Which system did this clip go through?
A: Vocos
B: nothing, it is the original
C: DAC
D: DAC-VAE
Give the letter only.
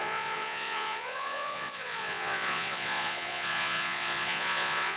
A